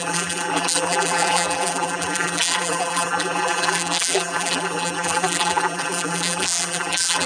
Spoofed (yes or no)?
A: yes